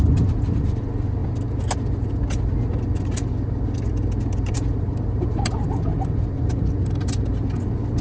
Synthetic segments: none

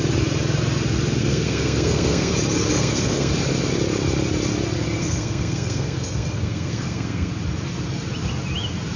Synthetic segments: 1.2-2.3 (codec, SNAC); 2.7-3.3; 5.0-7.3

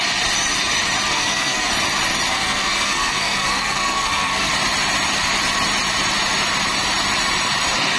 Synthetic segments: 1.1-1.7 (codec, SNAC); 2.3-4.5

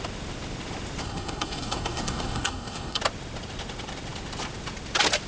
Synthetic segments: 1.0-3.0 (codec, SNAC)

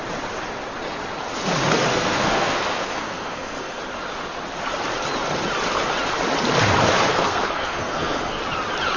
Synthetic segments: 1.9-3.8 (codec, SNAC); 7.1-8.4

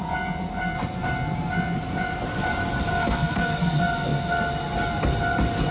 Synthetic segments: 2.9-3.6 (codec, SNAC)

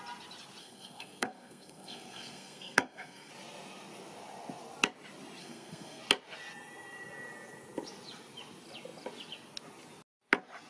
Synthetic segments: 0.6-3.3 (codec, SNAC); 5.4-6.0

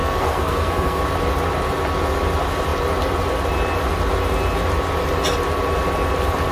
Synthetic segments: 0.0-1.0 (codec, SNAC)